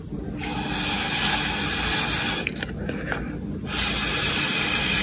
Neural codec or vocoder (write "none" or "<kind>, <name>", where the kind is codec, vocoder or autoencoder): none